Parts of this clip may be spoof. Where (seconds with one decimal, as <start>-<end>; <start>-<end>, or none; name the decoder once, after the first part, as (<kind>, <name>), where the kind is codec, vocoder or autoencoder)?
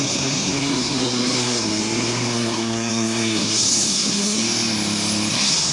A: 0.0-4.4 (codec, SNAC); 5.3-5.7